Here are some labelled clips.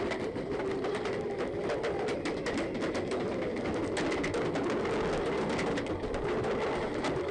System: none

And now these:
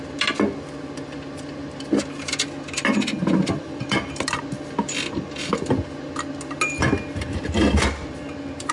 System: none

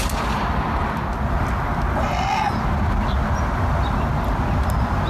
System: none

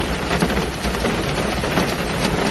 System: none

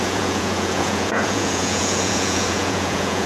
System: vocoder, Vocos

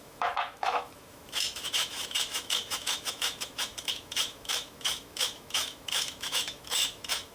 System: autoencoder, DAC-VAE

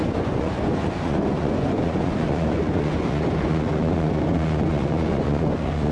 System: vocoder, Vocos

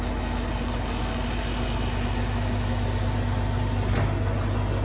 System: none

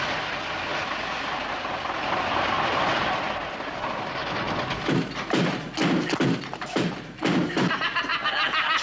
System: none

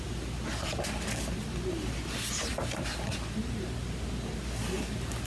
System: none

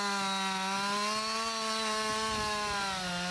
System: none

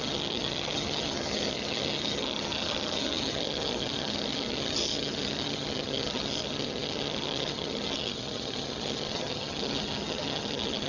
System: vocoder, HiFi-GAN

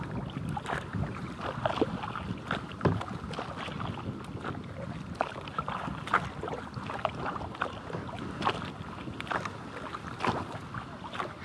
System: none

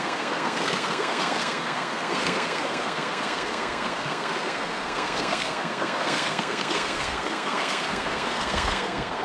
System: codec, SNAC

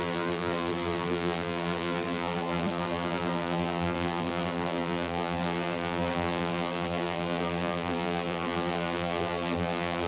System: vocoder, BigVGAN v2